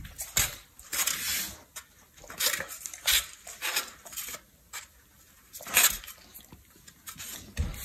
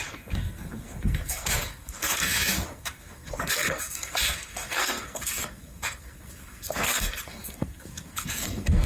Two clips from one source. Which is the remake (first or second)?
second